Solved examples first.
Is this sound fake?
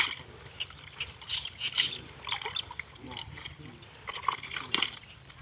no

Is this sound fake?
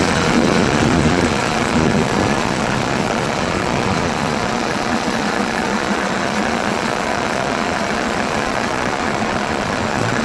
yes